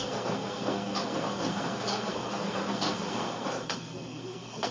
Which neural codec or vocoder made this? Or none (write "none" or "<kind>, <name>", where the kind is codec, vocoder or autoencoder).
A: codec, SNAC